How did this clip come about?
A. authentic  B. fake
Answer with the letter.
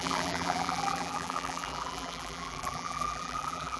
B